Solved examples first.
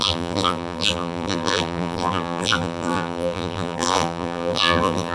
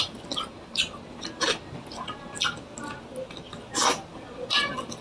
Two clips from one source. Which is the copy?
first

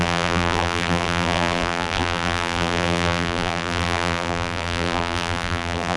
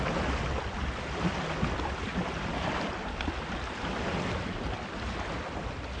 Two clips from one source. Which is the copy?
first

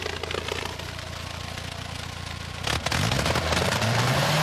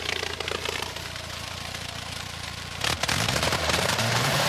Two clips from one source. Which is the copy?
second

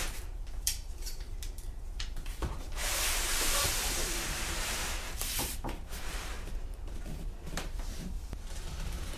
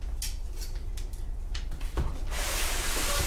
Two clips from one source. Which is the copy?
first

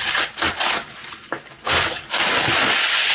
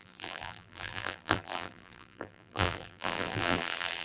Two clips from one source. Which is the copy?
second